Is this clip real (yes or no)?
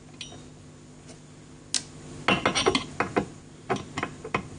yes